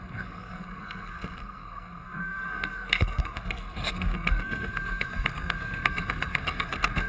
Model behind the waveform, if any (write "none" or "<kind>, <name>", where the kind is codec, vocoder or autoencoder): codec, SNAC